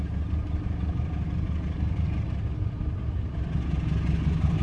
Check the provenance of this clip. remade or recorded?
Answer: recorded